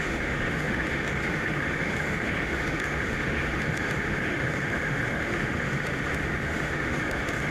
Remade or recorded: remade